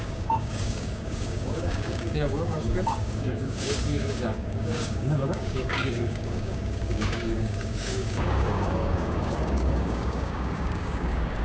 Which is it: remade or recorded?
remade